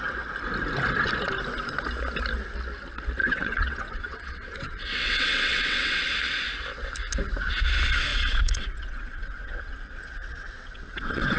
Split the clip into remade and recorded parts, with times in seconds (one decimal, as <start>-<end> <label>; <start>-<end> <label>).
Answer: 0.0-3.2 recorded; 3.2-6.0 remade; 6.0-8.1 recorded; 8.1-11.4 remade